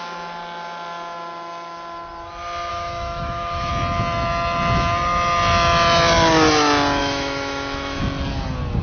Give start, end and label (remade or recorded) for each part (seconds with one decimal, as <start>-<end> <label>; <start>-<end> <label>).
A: 0.0-2.7 recorded; 2.7-3.7 remade; 3.7-7.0 recorded; 7.0-8.0 remade; 8.0-8.8 recorded